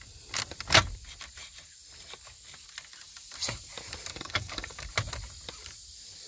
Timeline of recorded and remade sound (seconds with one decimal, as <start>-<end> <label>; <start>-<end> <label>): 0.0-4.1 recorded; 4.1-4.9 remade; 4.9-6.3 recorded